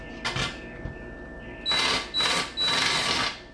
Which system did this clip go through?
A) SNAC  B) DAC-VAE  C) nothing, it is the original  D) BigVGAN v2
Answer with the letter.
C